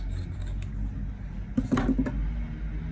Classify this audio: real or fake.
real